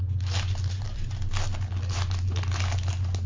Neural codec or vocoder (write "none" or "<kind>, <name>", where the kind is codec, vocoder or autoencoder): none